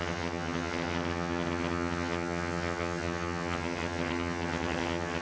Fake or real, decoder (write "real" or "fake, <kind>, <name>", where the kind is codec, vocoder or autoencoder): fake, vocoder, HiFi-GAN